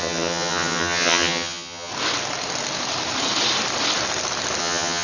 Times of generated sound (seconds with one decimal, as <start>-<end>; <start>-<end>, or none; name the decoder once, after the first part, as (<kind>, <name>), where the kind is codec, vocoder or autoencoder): 0.0-1.9 (vocoder, HiFi-GAN); 4.6-5.0